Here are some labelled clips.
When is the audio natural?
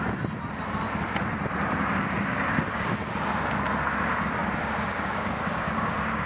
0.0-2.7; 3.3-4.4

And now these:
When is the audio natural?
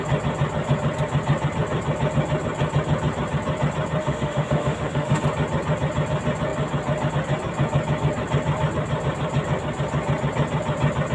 0.0-4.0; 5.2-11.1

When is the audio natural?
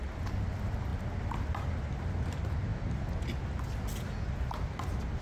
0.0-5.2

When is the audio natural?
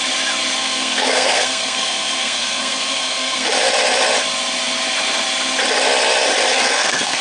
0.0-0.6; 3.5-6.5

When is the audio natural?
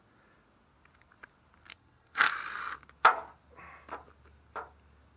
0.0-1.7; 2.3-5.2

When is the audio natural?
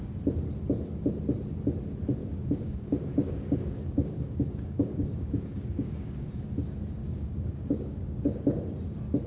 0.0-2.2; 6.4-7.0; 8.4-9.3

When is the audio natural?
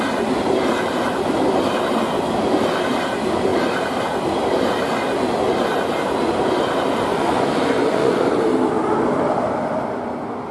0.0-7.1; 8.4-10.5